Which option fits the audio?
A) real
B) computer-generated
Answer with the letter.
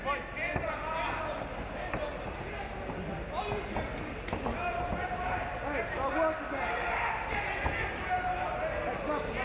A